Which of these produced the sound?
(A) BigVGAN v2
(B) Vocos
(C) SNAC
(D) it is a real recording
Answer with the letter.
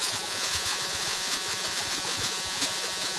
B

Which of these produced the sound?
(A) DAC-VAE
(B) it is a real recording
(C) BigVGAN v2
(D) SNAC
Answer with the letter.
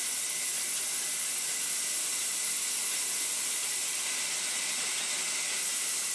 B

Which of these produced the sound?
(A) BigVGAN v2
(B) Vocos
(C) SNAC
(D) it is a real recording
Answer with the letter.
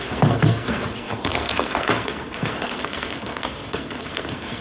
C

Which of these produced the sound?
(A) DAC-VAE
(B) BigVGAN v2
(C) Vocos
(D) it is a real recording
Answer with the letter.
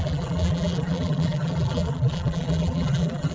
B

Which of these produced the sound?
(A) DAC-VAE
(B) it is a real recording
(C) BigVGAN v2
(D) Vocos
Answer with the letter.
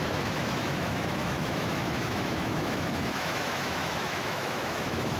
A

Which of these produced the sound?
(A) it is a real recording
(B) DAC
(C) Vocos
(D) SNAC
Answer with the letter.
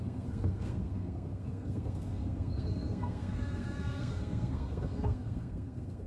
D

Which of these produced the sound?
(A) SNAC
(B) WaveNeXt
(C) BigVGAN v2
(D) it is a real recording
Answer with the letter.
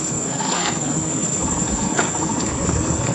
A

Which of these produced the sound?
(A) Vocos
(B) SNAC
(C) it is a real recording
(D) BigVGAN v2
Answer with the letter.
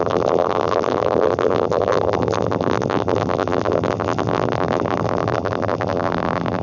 D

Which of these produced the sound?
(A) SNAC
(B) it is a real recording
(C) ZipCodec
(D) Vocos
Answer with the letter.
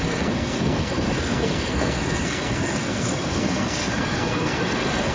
A